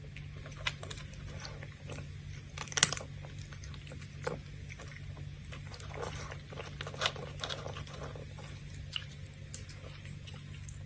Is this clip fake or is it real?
real